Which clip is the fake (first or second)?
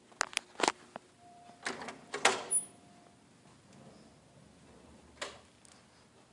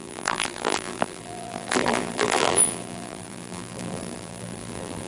second